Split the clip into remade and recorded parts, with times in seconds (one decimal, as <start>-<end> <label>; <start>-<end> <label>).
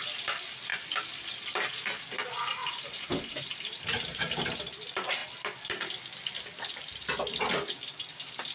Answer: 0.0-2.6 recorded; 2.6-3.8 remade; 3.8-8.5 recorded